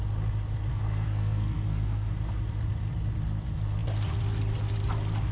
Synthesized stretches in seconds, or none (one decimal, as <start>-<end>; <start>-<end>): 0.7-2.1